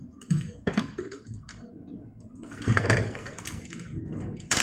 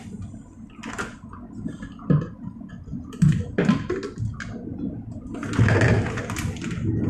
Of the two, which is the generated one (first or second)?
first